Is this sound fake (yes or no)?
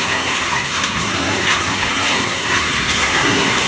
yes